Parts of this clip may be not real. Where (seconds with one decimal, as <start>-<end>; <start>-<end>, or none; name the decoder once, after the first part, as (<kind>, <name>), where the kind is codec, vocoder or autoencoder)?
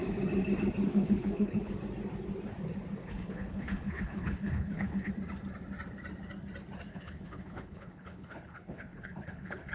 0.9-1.7 (codec, HILCodec); 3.0-5.1; 6.9-9.7